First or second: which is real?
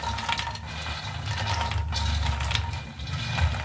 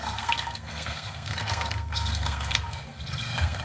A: first